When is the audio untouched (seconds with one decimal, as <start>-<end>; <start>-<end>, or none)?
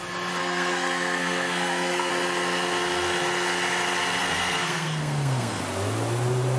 0.0-0.4; 2.1-4.2; 5.6-6.6